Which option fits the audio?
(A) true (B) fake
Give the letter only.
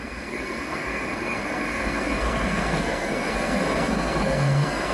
B